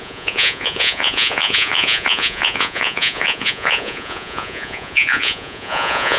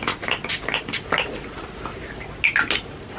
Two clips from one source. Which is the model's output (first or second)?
first